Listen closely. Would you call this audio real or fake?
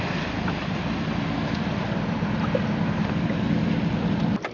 real